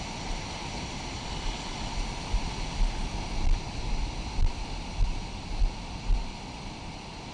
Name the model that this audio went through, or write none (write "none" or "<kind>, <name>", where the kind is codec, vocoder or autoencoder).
none